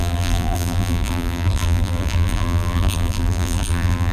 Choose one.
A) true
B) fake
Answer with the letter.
B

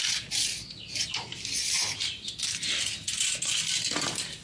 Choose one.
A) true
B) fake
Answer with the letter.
A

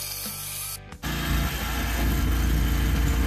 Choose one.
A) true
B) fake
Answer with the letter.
A